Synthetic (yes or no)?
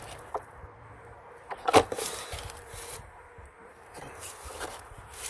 yes